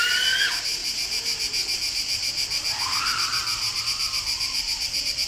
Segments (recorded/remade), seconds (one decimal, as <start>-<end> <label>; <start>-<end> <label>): 0.0-5.3 recorded